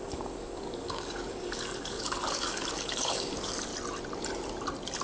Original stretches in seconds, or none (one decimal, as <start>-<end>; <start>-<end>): 3.7-5.0